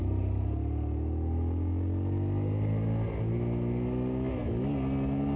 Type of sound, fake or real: real